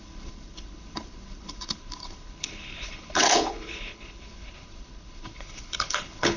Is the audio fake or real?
fake